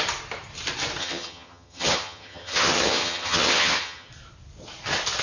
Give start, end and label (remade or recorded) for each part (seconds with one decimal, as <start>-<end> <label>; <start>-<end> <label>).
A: 0.0-1.0 recorded; 1.0-4.1 remade; 4.1-5.2 recorded